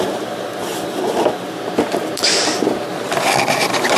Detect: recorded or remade recorded